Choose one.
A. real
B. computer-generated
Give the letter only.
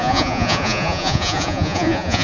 B